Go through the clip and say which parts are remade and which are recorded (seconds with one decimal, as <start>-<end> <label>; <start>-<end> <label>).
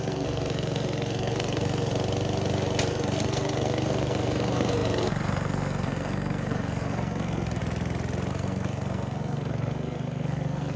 0.0-1.9 remade; 1.9-2.9 recorded; 2.9-7.6 remade; 7.6-8.3 recorded; 8.3-10.8 remade